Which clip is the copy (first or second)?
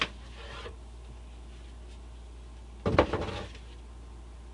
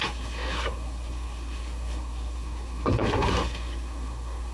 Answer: second